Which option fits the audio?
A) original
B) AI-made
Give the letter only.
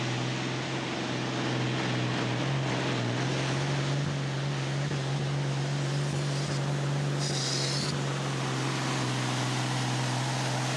A